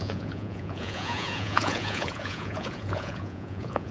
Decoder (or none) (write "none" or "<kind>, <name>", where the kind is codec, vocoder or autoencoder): vocoder, Vocos